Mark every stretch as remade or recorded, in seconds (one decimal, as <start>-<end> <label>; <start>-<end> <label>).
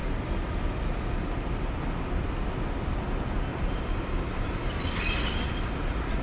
0.0-3.5 recorded; 3.5-5.4 remade; 5.4-6.2 recorded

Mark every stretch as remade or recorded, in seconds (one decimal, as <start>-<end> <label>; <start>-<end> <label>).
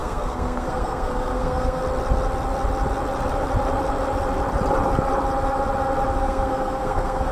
0.0-1.8 remade; 1.8-6.2 recorded; 6.2-7.3 remade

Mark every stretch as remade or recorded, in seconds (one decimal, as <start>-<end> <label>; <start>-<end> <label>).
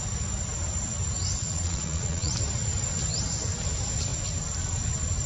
0.0-1.4 recorded; 1.4-2.3 remade; 2.3-5.3 recorded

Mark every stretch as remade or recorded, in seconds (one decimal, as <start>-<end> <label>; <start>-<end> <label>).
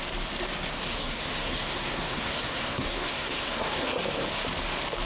0.0-0.9 recorded; 0.9-4.0 remade; 4.0-5.1 recorded